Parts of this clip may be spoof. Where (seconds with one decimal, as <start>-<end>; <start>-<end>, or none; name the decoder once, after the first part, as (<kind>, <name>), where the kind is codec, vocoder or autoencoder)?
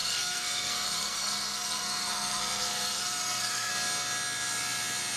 0.0-3.7 (codec, SNAC)